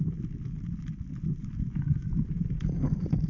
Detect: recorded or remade remade